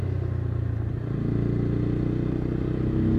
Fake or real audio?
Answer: real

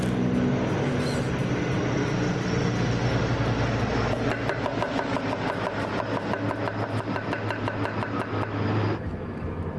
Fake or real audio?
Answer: real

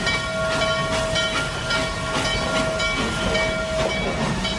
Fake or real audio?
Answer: real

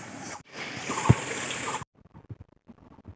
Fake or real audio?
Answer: real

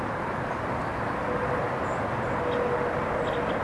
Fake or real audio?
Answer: real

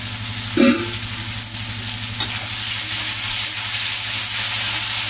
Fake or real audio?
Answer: real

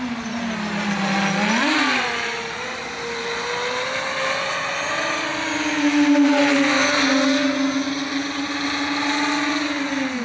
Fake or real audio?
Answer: real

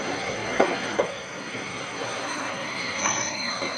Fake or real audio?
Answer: fake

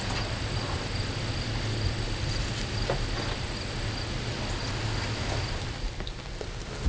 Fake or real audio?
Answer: real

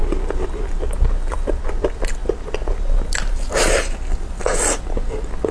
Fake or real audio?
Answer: real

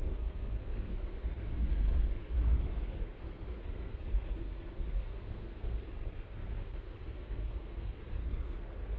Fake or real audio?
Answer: fake